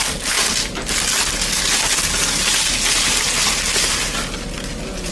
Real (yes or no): yes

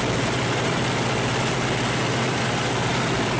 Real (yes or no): yes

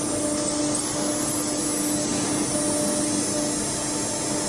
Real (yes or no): yes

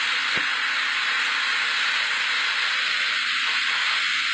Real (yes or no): yes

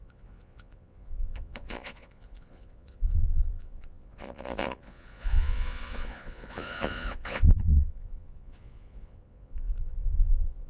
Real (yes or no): no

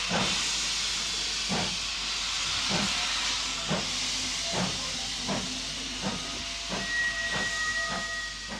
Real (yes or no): yes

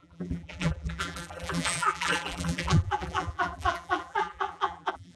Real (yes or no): no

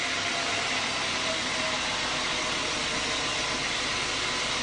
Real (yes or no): yes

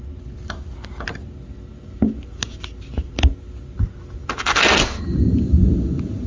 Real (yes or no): yes